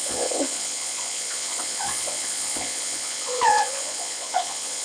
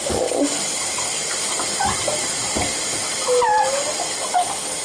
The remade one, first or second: first